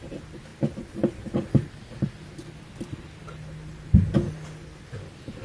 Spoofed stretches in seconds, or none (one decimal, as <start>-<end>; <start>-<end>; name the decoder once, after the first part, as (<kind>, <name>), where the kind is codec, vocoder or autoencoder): none